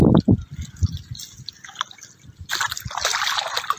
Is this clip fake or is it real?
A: real